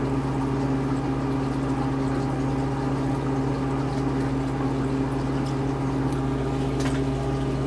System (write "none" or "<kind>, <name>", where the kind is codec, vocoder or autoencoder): none